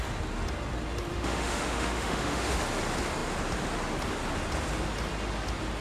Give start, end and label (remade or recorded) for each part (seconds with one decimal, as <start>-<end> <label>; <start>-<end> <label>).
0.0-1.1 recorded; 1.1-2.6 remade; 2.6-5.8 recorded